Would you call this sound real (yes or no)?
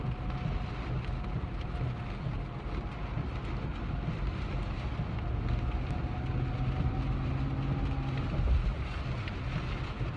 yes